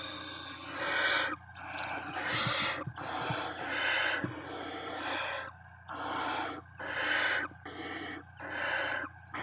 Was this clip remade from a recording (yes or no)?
no